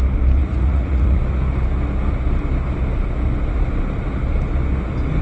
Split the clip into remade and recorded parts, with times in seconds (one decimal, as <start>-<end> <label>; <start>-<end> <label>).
0.0-0.4 recorded; 0.4-1.2 remade; 1.2-5.2 recorded